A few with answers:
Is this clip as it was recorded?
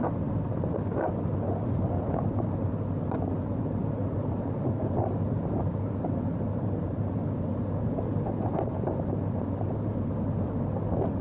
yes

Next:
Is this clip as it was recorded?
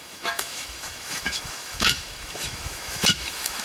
no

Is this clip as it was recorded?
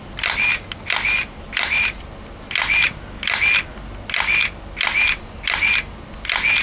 yes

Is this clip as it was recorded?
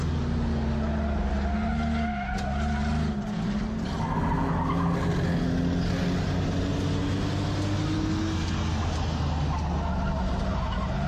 yes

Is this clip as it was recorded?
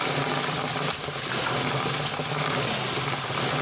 yes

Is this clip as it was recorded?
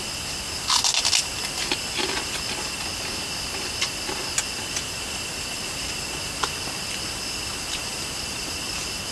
yes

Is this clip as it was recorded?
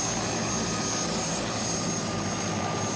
yes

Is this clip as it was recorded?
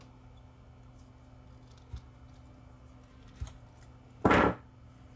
yes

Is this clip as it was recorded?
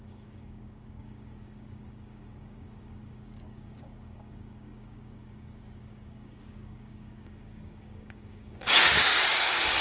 no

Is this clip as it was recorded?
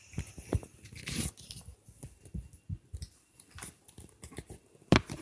yes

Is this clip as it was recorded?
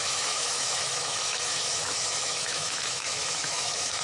no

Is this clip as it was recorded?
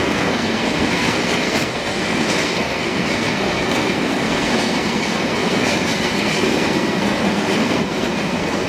no